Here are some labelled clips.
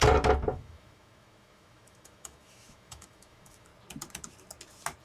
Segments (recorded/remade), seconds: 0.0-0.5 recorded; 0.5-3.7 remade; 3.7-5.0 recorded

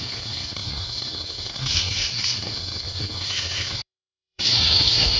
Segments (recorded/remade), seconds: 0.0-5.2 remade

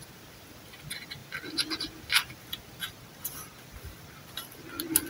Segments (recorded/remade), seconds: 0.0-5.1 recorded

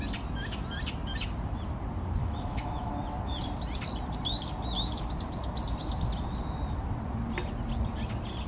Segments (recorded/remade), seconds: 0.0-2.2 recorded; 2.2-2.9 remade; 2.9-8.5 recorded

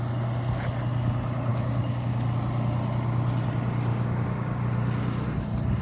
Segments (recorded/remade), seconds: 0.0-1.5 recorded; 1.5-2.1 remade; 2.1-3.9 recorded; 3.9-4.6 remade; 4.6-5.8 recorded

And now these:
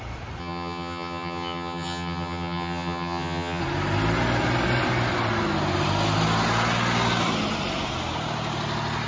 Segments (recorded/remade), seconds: 0.0-0.4 recorded; 0.4-3.6 remade; 3.6-9.1 recorded

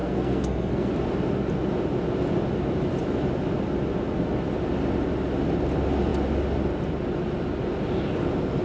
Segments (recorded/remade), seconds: 0.0-0.9 remade; 0.9-8.6 recorded

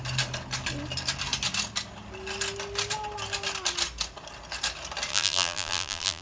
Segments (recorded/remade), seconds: 0.0-5.1 recorded; 5.1-6.2 remade